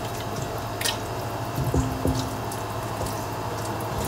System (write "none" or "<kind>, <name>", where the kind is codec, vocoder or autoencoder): none